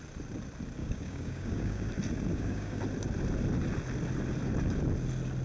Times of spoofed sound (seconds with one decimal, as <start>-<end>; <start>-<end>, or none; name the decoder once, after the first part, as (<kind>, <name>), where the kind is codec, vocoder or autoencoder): 0.8-1.9 (codec, DAC); 2.3-2.8